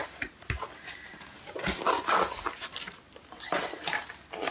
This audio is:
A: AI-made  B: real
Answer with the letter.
B